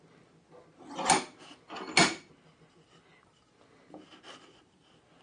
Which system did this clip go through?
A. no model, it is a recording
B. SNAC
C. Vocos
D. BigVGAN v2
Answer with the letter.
A